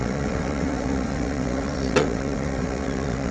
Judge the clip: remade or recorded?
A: remade